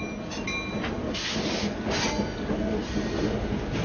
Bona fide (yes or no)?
yes